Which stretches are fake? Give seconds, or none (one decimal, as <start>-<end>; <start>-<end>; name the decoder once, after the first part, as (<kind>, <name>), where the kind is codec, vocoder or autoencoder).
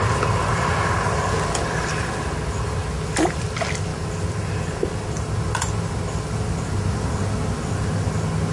none